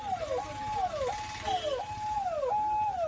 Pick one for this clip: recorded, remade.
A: recorded